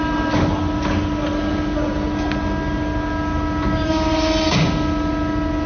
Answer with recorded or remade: recorded